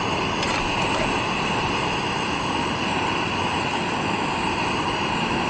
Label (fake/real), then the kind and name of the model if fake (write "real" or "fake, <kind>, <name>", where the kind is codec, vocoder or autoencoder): real